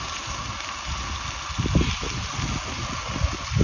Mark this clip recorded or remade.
recorded